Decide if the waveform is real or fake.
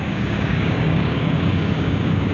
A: fake